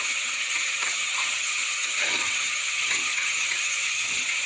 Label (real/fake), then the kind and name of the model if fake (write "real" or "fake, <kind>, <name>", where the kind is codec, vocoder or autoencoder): fake, vocoder, HiFi-GAN